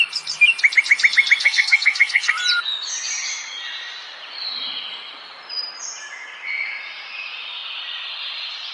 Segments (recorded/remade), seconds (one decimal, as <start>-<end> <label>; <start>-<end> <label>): 0.0-1.4 recorded; 1.4-2.3 remade; 2.3-8.7 recorded